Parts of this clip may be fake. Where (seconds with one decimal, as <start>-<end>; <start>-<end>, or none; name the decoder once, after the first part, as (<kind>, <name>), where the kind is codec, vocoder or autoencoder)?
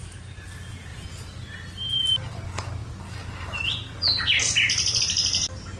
none